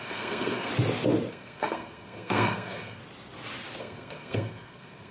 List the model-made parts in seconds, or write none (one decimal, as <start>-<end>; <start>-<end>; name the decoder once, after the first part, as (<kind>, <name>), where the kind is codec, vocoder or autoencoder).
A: 0.0-0.7 (codec, SNAC); 1.3-3.0; 3.8-5.1